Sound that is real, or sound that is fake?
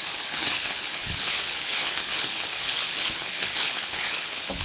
fake